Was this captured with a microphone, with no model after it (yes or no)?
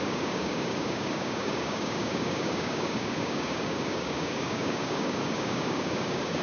no